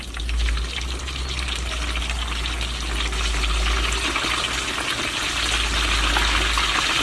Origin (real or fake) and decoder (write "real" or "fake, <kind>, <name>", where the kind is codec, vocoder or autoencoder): real